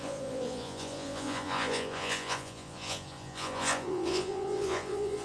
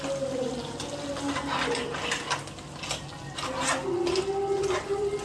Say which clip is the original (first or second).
second